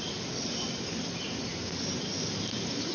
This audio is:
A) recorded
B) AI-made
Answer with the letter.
A